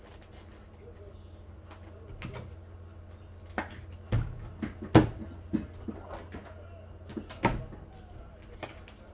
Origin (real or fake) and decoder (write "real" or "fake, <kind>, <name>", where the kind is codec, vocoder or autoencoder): real